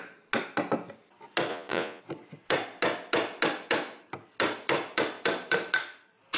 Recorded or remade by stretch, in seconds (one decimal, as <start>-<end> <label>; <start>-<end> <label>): 0.0-1.5 recorded; 1.5-2.0 remade; 2.0-6.4 recorded